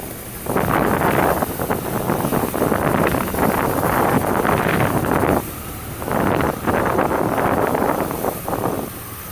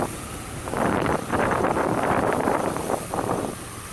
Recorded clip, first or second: first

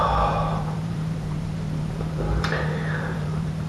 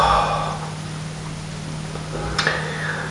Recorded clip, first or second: second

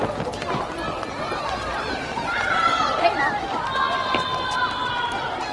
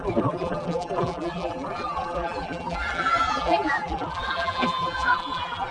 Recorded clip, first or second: first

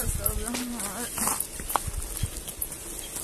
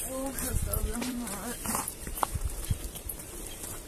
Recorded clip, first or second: first